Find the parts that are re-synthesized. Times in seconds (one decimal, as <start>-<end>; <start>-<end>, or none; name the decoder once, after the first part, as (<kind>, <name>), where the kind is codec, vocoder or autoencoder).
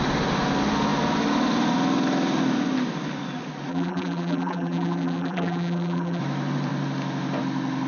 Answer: 3.7-6.2 (vocoder, BigVGAN v2)